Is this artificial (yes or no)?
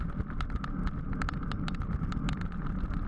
no